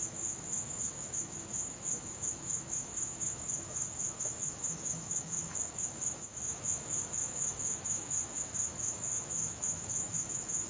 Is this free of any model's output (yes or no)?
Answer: no